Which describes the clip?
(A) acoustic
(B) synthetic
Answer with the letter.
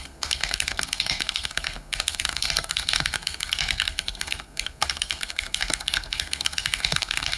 B